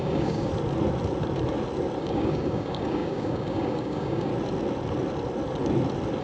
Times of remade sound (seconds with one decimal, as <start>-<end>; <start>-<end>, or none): 0.0-0.5; 2.0-4.3

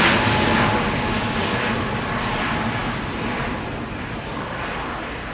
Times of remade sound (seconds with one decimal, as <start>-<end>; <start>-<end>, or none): 1.4-2.3; 2.8-4.6

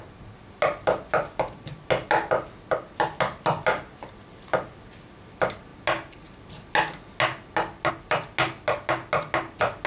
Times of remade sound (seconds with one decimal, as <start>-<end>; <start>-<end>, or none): none

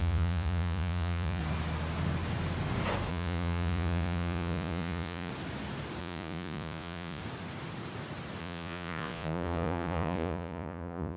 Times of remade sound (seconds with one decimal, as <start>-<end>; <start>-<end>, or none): 0.0-1.4; 3.1-5.3; 6.0-7.2; 8.4-11.2

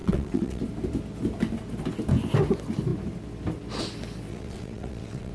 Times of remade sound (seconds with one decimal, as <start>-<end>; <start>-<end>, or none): 0.0-0.6; 4.3-5.3

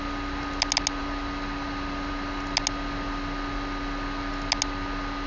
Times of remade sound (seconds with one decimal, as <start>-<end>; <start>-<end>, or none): none

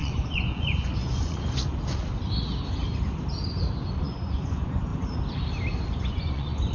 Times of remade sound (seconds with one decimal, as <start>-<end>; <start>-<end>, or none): 0.0-1.6; 3.9-4.9; 5.9-6.7